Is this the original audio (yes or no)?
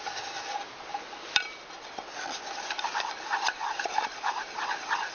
yes